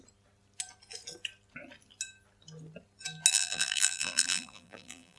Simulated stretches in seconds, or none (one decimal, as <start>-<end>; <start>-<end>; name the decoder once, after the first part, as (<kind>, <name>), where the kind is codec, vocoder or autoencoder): 3.3-5.2 (vocoder, BigVGAN v2)